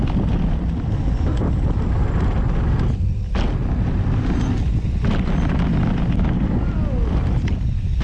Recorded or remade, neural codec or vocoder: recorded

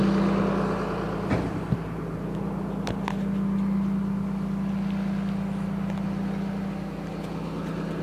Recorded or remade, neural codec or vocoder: recorded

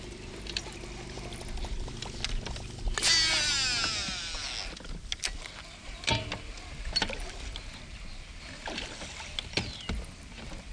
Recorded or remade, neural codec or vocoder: recorded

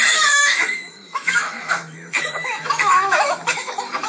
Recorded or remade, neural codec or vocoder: remade, autoencoder, DAC-VAE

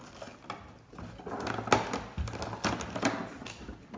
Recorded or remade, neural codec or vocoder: recorded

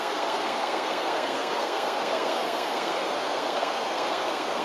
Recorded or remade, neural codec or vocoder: remade, codec, SNAC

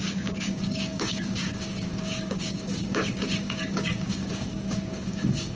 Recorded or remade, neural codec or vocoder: remade, codec, DAC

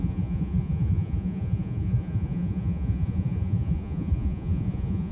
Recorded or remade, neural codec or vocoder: remade, vocoder, Vocos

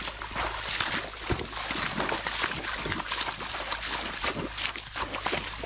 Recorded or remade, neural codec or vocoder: recorded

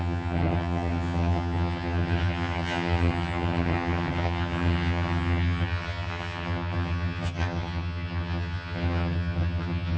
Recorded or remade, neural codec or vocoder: remade, vocoder, HiFi-GAN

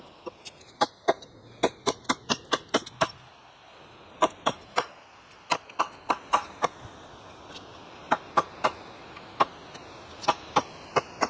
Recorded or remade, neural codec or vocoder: recorded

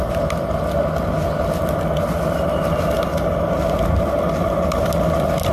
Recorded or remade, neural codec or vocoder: recorded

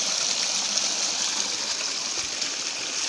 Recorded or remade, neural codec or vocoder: recorded